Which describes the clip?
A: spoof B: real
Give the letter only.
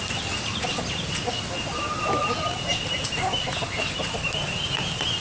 B